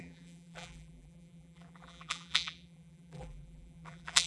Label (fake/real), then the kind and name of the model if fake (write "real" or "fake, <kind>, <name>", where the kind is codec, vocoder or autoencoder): fake, vocoder, BigVGAN v2